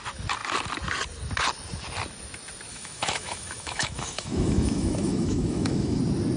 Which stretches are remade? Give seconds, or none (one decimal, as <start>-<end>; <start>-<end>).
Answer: 2.7-6.0